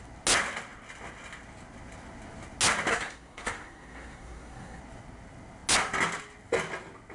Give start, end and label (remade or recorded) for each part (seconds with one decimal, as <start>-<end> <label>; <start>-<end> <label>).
0.0-2.9 recorded; 2.9-4.8 remade; 4.8-7.1 recorded